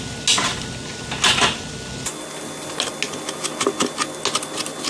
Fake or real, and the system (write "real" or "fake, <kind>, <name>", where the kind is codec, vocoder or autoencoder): real